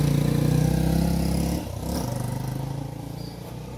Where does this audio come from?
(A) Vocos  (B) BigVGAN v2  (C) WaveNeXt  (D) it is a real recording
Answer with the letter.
D